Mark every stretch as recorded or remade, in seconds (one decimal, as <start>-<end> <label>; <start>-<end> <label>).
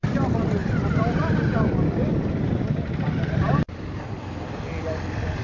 0.0-5.4 remade